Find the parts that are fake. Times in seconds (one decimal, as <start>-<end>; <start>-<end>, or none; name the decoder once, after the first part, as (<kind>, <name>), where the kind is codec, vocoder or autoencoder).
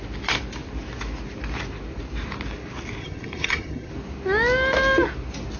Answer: 3.0-3.9 (vocoder, HiFi-GAN)